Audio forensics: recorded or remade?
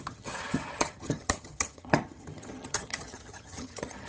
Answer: remade